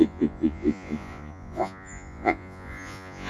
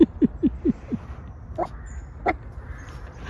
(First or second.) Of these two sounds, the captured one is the second